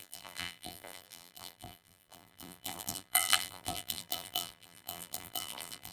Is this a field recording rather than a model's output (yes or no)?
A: no